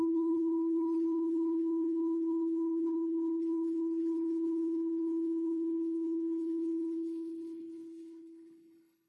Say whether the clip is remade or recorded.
remade